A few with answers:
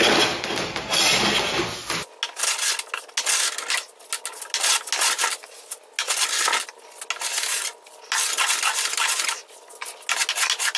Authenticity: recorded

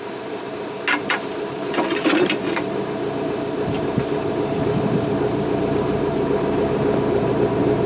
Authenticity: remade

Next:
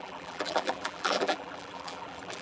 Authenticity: remade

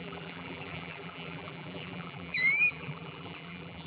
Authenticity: remade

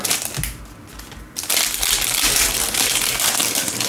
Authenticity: recorded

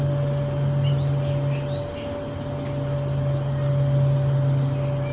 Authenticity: recorded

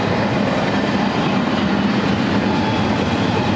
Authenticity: recorded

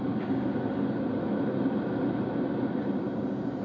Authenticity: recorded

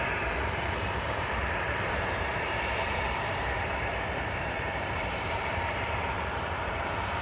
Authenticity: remade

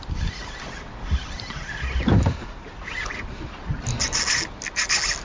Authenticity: recorded